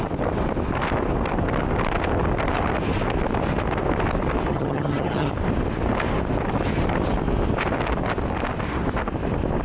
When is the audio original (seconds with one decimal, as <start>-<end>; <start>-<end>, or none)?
0.0-4.5; 5.3-9.6